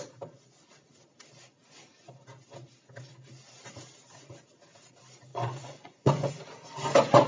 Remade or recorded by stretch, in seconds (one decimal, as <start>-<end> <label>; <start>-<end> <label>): 0.0-5.3 recorded; 5.3-6.3 remade; 6.3-7.3 recorded